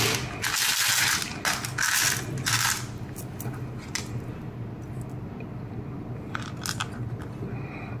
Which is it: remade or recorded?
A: recorded